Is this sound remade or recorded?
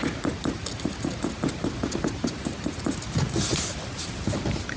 recorded